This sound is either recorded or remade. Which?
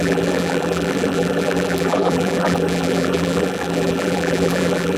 remade